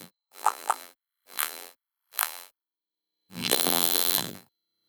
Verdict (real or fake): fake